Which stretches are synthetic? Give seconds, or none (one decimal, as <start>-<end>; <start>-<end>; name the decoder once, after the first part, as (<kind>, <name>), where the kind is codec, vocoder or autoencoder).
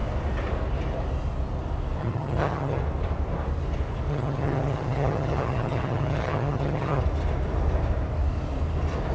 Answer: 2.0-2.8 (vocoder, HiFi-GAN); 4.1-7.0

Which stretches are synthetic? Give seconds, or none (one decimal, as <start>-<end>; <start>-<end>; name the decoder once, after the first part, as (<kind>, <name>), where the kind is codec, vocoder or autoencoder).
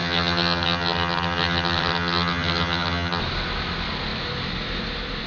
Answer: 0.0-3.2 (vocoder, HiFi-GAN)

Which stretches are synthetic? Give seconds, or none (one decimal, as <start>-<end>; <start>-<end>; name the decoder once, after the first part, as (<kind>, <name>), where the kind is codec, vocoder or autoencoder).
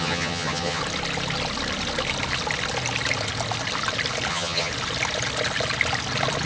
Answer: 0.0-0.8 (vocoder, HiFi-GAN); 4.3-4.7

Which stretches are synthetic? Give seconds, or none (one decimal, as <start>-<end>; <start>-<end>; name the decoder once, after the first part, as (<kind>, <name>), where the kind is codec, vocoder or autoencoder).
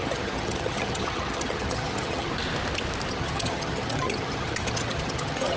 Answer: 0.0-2.3 (vocoder, HiFi-GAN); 3.1-5.6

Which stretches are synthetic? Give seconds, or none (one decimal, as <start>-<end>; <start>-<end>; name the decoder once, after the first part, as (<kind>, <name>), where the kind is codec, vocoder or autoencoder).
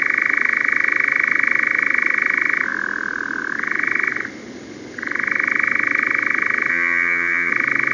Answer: 6.7-7.5 (vocoder, HiFi-GAN)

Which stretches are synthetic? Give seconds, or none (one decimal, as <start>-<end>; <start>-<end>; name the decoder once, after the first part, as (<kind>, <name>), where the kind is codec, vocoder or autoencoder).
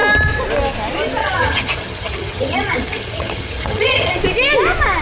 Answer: 1.2-4.2 (vocoder, HiFi-GAN)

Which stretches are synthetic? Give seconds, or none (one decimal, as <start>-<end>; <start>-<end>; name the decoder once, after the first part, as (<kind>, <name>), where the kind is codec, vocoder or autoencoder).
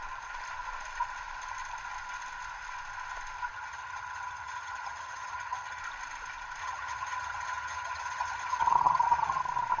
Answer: 3.5-5.8 (vocoder, HiFi-GAN); 6.6-9.4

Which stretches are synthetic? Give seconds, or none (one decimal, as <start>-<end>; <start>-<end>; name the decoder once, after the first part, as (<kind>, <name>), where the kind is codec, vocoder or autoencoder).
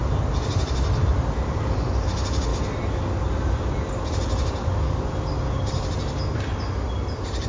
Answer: none